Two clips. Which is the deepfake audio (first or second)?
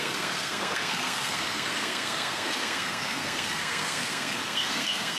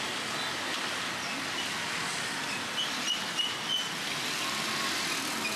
first